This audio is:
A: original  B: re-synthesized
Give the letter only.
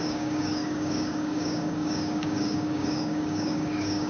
B